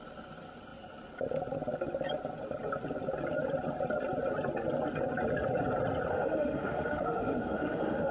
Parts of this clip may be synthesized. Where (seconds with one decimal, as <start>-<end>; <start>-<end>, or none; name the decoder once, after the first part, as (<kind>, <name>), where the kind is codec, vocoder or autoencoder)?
6.1-8.1 (autoencoder, DAC-VAE)